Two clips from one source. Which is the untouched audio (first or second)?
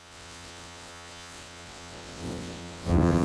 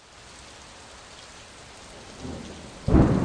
second